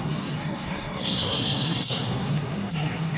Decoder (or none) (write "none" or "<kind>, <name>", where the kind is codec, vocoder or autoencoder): codec, SNAC